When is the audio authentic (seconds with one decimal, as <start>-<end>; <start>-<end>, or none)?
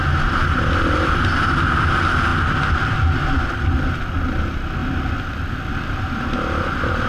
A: 0.0-7.1